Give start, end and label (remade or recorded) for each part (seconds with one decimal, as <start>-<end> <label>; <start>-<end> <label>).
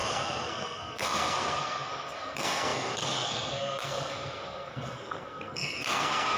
0.0-6.4 remade